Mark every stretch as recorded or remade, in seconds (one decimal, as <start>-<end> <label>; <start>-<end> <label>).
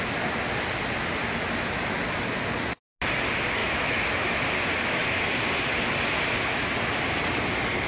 0.0-3.6 recorded; 3.6-4.4 remade; 4.4-7.9 recorded